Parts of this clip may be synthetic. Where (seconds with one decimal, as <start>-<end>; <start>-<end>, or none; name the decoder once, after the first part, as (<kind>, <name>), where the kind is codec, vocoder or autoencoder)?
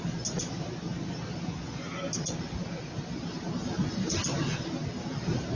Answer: none